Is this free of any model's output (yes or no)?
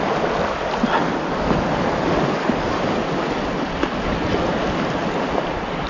yes